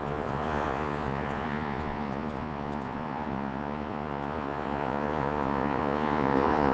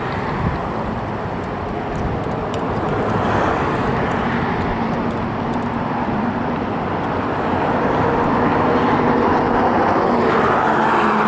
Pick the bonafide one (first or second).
second